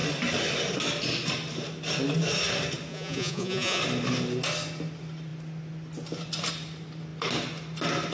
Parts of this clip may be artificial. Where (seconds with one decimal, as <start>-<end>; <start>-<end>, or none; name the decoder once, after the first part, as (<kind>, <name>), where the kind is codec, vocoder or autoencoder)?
2.9-3.8 (vocoder, Vocos)